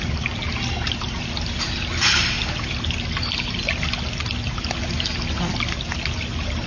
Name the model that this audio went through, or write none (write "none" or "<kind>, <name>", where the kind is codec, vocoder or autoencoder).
none